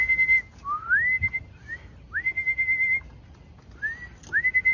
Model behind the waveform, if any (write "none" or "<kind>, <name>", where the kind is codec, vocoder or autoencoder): none